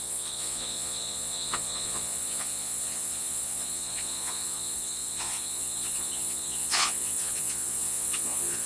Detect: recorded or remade remade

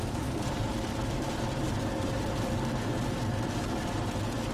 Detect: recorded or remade recorded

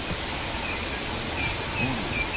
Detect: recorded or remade recorded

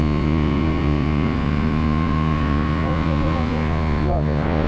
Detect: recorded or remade remade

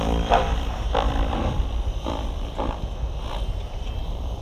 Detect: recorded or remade recorded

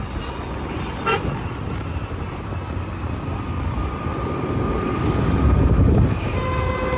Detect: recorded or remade recorded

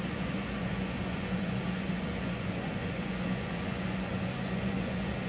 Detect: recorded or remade remade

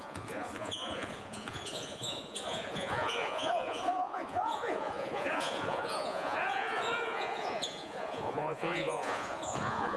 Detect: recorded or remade remade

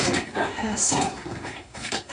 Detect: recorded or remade remade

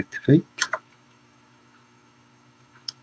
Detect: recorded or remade remade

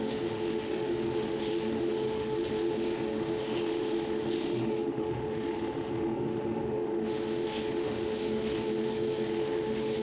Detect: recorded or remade remade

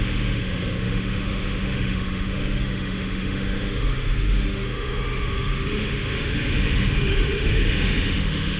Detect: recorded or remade remade